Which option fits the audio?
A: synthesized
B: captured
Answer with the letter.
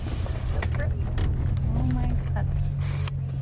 B